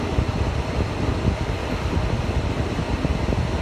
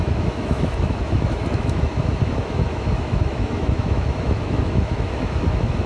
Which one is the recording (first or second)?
first